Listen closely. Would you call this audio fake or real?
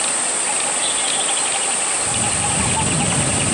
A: real